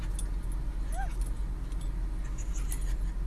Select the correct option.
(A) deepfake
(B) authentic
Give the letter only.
B